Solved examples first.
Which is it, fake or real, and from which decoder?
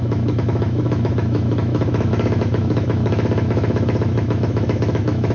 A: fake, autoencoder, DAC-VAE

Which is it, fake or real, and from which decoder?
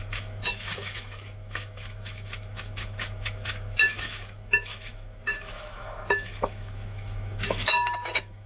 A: fake, autoencoder, DAC-VAE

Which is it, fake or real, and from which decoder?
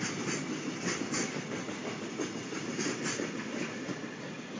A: real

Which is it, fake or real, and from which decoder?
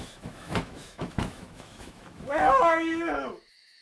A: fake, autoencoder, DAC-VAE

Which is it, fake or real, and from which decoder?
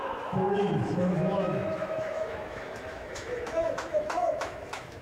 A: fake, autoencoder, DAC-VAE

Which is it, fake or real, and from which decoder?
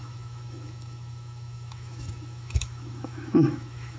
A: fake, autoencoder, DAC-VAE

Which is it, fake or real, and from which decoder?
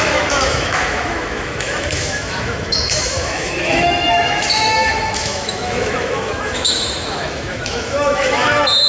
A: fake, autoencoder, DAC-VAE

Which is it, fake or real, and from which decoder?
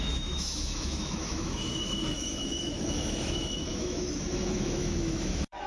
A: fake, autoencoder, DAC-VAE